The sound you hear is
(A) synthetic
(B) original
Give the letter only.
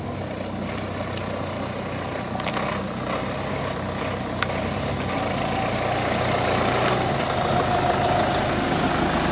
B